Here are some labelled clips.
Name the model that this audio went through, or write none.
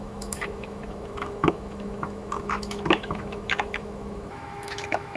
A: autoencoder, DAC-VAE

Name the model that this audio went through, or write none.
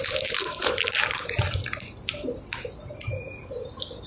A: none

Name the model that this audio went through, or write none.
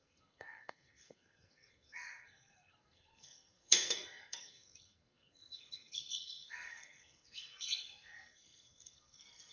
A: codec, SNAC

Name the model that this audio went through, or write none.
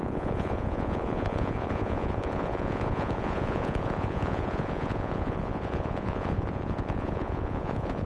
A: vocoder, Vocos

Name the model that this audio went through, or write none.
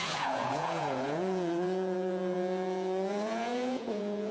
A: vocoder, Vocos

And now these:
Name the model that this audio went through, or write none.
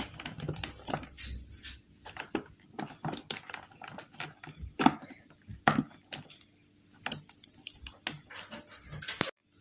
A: none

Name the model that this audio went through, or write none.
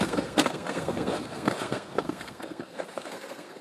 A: codec, SNAC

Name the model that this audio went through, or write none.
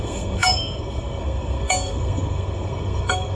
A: codec, SNAC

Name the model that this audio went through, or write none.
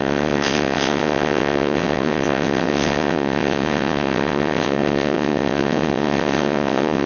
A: vocoder, WaveNeXt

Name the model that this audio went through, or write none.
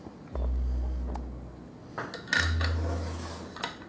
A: none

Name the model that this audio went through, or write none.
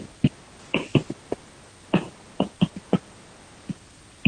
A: none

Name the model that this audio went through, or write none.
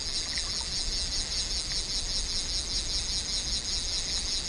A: none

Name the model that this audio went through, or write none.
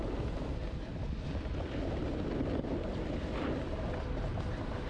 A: none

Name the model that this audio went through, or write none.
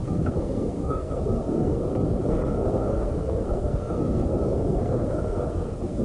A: codec, SNAC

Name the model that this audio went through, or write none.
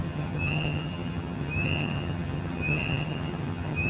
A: vocoder, HiFi-GAN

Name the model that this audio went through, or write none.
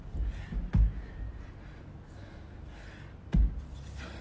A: none